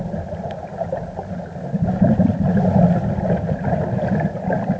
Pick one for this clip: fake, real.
real